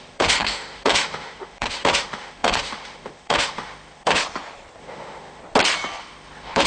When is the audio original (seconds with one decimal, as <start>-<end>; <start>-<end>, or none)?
4.2-4.8; 5.4-6.0